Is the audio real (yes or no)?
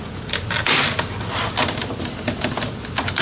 yes